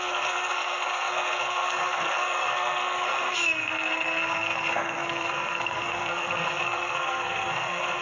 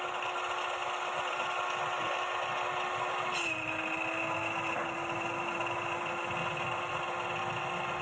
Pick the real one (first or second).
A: second